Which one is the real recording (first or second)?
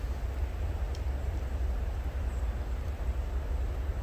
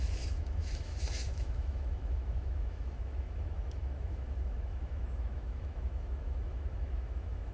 first